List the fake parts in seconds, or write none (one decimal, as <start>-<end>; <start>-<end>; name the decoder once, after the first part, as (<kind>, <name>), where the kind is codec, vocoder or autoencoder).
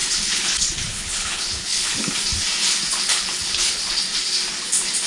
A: 0.0-2.0 (codec, HILCodec); 3.1-3.9